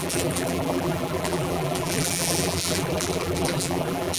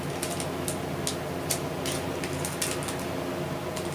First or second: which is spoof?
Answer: first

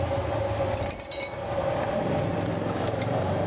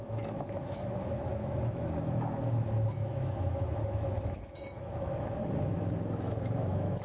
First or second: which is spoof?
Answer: second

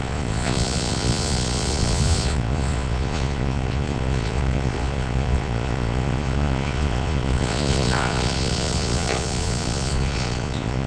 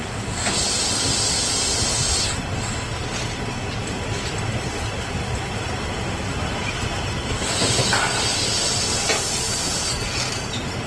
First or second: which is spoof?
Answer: first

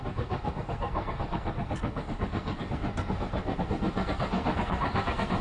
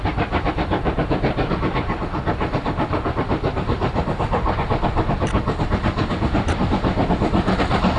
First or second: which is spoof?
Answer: first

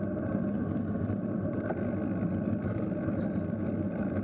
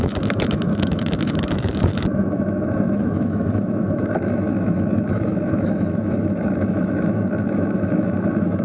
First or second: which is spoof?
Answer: second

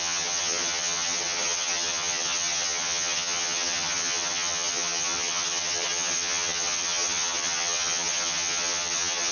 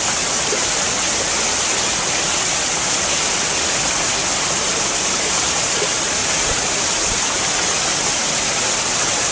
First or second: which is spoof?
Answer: first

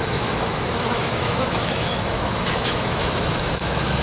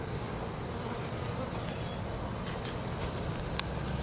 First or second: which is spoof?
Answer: first